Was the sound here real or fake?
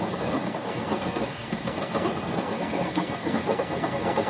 fake